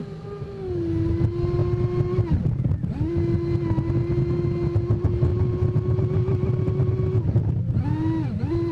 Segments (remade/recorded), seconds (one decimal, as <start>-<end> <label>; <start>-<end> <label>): 0.0-8.7 recorded